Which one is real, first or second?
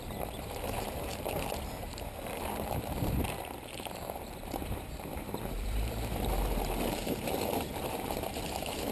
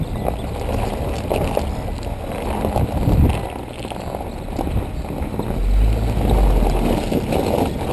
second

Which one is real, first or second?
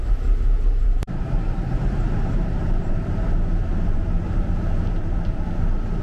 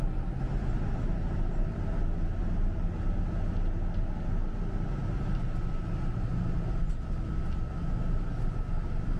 second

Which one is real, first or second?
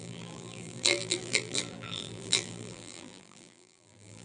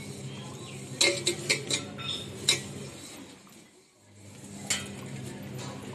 second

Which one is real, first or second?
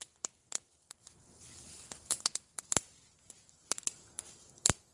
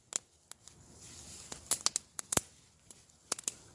second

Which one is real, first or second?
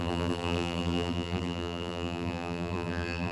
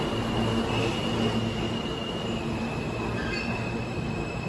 second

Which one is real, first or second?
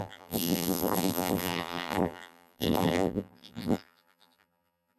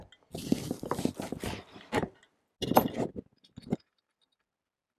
second